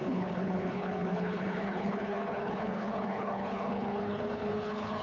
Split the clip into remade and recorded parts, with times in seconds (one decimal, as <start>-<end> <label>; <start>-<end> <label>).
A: 0.0-5.0 remade